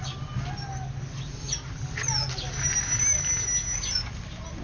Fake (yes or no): no